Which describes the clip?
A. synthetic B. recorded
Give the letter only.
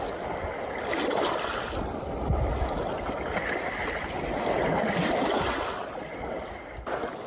B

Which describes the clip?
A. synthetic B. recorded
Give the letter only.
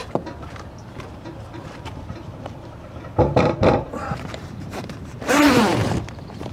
A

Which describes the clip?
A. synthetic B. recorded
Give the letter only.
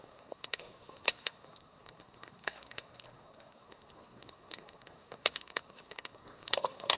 A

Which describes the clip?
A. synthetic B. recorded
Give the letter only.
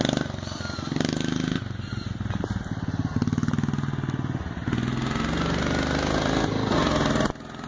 B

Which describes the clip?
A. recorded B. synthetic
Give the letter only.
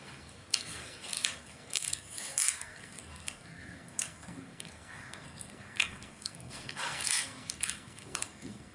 B